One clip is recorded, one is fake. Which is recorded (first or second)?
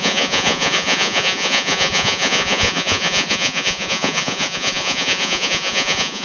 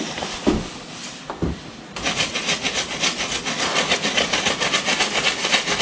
second